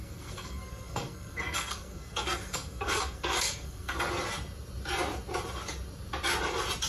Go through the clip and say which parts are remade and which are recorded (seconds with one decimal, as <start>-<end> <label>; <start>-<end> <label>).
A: 0.0-4.1 remade; 4.1-6.9 recorded